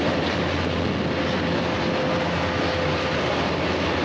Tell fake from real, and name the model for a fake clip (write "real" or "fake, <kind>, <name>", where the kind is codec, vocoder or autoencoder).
real